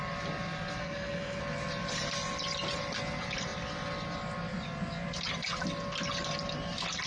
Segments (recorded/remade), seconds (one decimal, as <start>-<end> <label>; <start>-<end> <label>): 0.0-0.8 recorded; 0.8-1.4 remade; 1.4-7.1 recorded